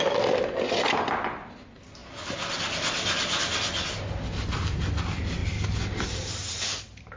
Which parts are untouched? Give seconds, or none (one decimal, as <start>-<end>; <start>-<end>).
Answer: 0.0-7.2